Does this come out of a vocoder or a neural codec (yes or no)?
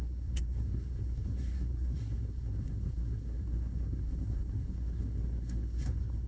yes